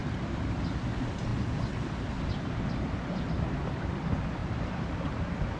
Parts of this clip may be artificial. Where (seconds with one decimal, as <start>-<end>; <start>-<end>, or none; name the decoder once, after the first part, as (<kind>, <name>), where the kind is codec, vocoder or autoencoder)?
none